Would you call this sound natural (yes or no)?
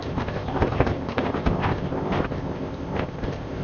no